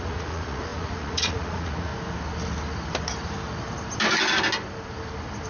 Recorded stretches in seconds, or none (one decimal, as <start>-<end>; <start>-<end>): 1.9-5.5